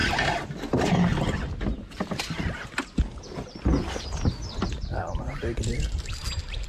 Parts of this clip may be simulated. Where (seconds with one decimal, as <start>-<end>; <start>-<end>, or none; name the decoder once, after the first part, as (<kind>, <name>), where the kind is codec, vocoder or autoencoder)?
none